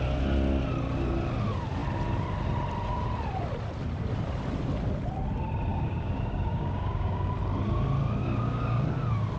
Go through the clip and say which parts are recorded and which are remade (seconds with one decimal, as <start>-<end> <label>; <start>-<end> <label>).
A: 0.0-5.7 recorded; 5.7-7.3 remade; 7.3-8.2 recorded; 8.2-8.8 remade; 8.8-9.4 recorded